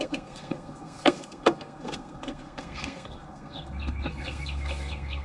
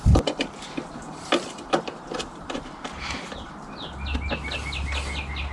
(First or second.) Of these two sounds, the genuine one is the second